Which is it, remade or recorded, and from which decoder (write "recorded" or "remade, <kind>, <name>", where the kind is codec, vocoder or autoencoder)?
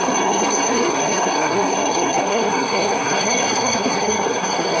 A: remade, codec, SNAC